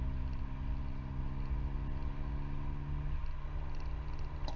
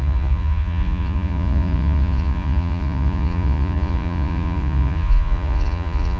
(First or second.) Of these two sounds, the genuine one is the first